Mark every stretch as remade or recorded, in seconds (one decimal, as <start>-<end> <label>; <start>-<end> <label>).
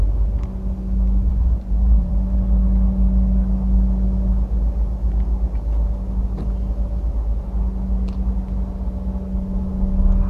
0.0-1.3 recorded; 1.3-2.1 remade; 2.1-10.3 recorded